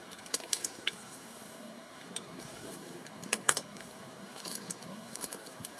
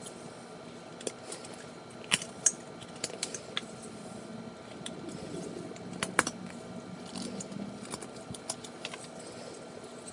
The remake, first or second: first